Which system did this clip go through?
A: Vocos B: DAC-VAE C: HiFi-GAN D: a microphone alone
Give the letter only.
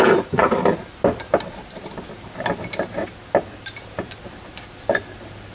D